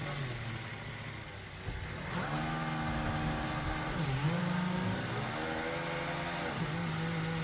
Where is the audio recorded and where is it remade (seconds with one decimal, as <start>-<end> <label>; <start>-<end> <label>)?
0.0-7.4 recorded